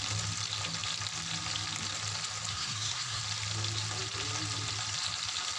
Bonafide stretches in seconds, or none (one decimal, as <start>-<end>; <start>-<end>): 0.0-2.5; 3.2-5.6